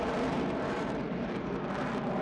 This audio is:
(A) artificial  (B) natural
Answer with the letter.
A